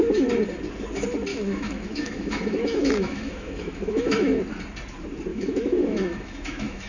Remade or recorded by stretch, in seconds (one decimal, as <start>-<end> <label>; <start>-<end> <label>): 0.0-1.3 recorded; 1.3-4.4 remade; 4.4-5.3 recorded; 5.3-6.9 remade